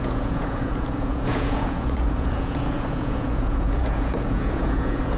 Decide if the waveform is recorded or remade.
remade